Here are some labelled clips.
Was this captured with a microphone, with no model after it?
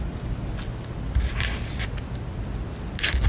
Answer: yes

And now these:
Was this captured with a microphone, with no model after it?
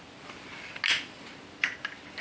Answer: yes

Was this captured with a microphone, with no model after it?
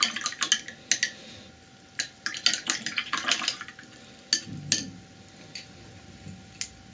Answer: yes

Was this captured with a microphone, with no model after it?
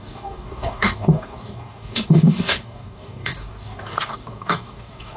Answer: no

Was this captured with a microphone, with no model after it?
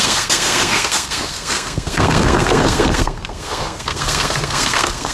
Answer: no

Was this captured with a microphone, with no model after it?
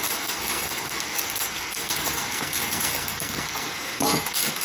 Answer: no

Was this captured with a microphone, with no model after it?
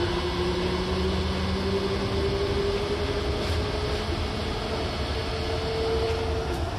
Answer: yes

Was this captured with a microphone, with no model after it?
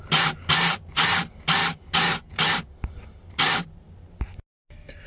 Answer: yes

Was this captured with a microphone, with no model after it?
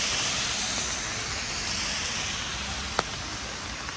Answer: yes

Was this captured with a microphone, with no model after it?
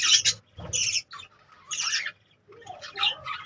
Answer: yes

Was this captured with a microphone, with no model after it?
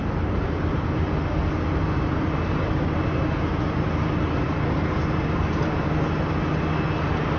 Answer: yes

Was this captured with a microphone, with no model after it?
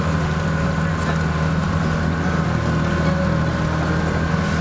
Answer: yes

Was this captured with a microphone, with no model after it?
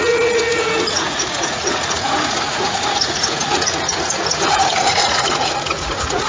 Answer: no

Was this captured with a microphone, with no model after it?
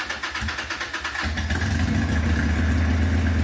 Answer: yes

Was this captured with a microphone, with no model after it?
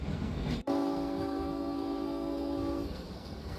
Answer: no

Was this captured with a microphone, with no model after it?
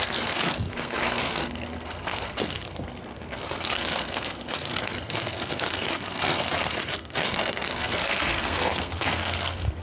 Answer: no